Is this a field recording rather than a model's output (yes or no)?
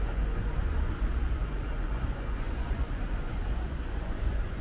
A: no